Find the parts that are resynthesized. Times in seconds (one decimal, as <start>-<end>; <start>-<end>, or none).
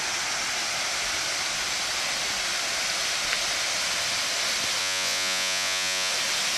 4.8-6.1